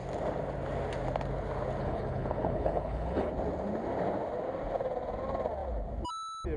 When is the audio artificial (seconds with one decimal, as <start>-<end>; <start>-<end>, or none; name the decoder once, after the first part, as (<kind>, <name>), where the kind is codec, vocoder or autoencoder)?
1.8-3.3 (codec, HILCodec)